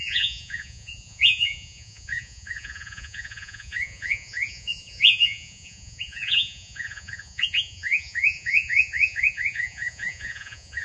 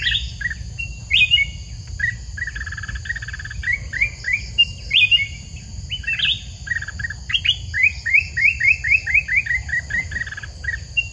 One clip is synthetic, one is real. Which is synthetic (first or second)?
first